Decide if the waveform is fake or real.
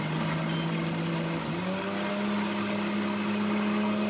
real